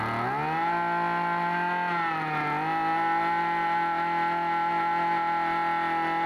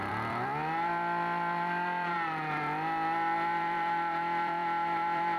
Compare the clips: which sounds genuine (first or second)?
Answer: first